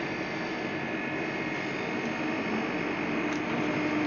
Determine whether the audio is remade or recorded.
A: recorded